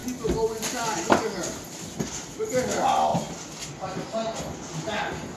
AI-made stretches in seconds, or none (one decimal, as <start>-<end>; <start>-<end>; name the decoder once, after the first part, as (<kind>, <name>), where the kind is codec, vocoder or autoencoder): none